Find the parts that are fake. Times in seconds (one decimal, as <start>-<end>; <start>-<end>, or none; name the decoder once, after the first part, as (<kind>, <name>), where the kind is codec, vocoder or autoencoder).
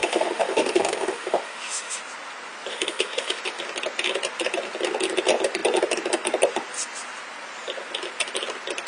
0.0-2.0 (autoencoder, DAC-VAE); 2.7-3.4